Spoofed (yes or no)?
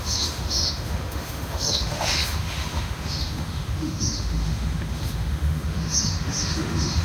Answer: yes